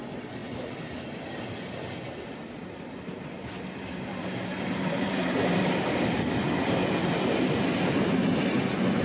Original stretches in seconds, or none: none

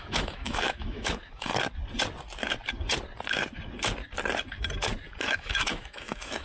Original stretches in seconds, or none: 1.5-5.2

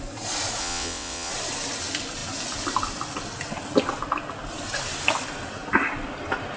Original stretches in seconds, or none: 0.0-0.6; 1.3-6.6